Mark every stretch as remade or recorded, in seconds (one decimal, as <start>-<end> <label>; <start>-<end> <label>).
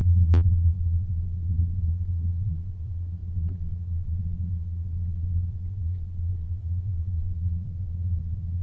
0.0-8.6 remade